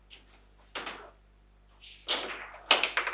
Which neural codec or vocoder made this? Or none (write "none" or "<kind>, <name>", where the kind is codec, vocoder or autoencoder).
none